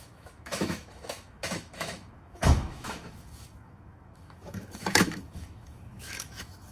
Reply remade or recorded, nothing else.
remade